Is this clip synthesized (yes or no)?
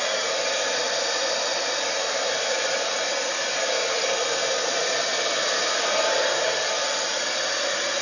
no